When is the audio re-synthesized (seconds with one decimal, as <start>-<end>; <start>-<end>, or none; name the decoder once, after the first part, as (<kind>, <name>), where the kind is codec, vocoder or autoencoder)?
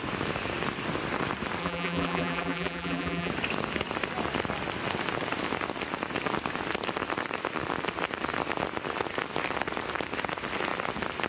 1.6-3.3 (vocoder, BigVGAN v2)